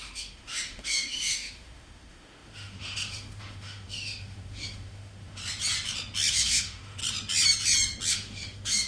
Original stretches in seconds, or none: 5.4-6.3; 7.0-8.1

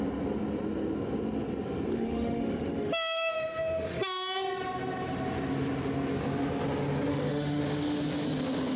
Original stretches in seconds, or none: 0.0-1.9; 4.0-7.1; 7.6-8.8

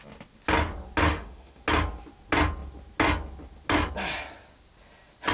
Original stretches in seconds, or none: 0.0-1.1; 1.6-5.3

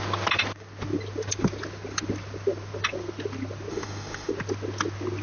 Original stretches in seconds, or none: 0.0-3.7; 4.3-5.2

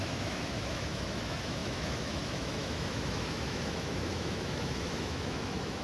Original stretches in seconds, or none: none

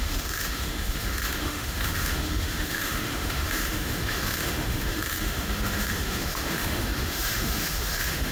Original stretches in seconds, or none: none

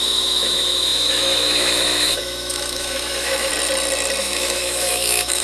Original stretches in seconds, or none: 3.5-4.2